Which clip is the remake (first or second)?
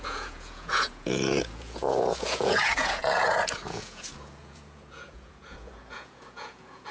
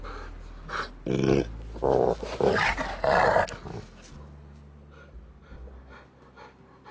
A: first